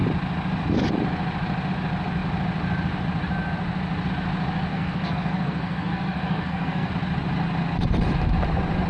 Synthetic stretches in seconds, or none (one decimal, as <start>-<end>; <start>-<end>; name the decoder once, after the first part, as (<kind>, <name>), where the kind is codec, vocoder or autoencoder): 4.7-6.9 (codec, SNAC)